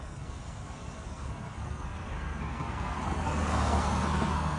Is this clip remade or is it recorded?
remade